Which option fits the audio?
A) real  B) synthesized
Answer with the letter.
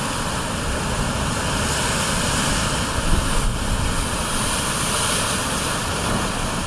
A